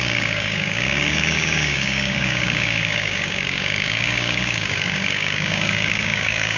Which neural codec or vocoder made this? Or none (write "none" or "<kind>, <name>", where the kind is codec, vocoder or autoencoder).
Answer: codec, DAC